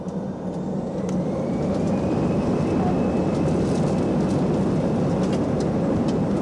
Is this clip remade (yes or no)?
no